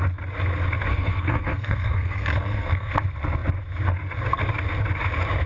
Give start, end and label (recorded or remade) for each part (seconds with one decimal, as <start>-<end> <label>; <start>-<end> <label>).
0.0-0.9 recorded; 0.9-2.9 remade; 2.9-5.5 recorded